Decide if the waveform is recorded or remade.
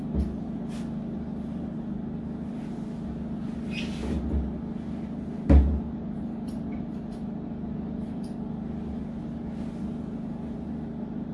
recorded